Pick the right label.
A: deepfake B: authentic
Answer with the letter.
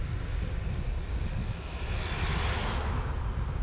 B